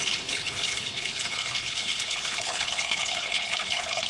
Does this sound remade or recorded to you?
remade